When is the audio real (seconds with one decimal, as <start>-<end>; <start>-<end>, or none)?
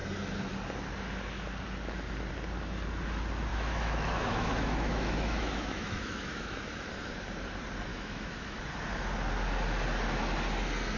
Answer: 0.0-3.5; 6.9-7.9; 8.6-11.0